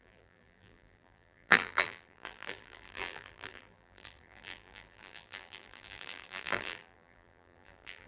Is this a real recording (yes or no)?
no